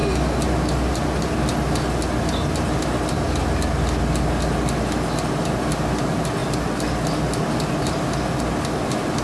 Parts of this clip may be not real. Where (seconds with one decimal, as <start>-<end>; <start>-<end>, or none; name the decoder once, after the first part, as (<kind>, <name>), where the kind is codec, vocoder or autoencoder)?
none